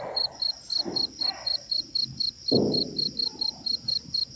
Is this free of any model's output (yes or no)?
no